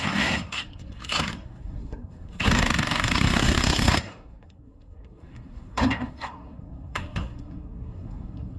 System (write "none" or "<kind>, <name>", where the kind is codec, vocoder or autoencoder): codec, SNAC